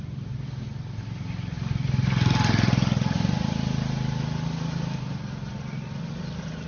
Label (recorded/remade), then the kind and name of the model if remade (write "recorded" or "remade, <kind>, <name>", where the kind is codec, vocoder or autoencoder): recorded